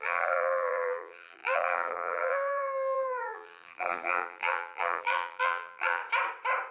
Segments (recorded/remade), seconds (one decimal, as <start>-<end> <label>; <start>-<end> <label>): 0.0-6.0 remade; 6.0-6.7 recorded